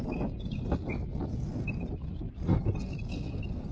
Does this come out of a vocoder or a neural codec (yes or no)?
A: no